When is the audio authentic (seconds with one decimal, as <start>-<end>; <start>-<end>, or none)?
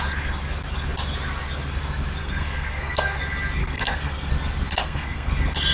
0.0-2.2; 3.2-3.6; 4.3-4.8; 5.3-5.7